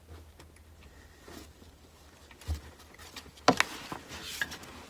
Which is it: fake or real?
real